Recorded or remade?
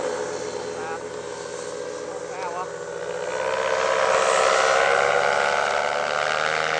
recorded